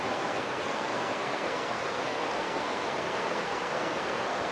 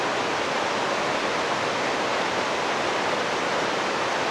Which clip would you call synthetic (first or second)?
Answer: first